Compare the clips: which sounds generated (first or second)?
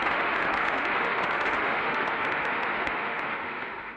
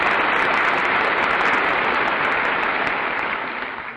first